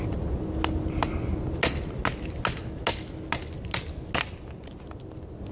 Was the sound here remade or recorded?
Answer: recorded